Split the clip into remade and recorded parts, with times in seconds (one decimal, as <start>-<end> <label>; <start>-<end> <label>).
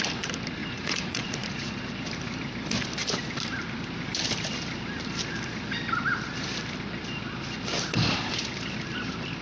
0.0-0.6 recorded; 0.6-1.7 remade; 1.7-9.4 recorded